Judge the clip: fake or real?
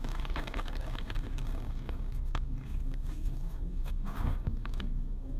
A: fake